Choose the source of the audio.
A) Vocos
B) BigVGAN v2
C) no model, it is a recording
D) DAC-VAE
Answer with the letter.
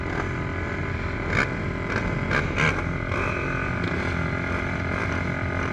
C